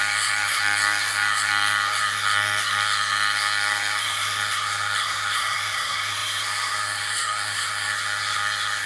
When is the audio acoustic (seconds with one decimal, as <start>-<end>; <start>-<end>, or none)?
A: none